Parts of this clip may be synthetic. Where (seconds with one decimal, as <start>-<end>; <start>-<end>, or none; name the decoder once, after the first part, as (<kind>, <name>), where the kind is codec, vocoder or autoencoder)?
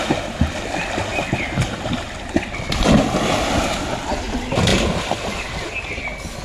none